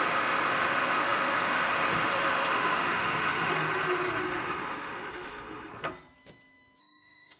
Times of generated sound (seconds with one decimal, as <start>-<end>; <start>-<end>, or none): 0.0-3.5; 4.2-5.7; 6.8-7.4